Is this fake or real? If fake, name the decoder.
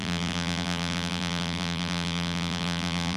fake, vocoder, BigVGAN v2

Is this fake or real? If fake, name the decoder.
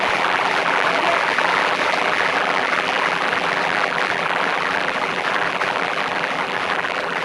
fake, vocoder, BigVGAN v2